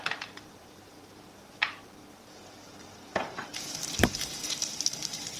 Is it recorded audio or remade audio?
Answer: remade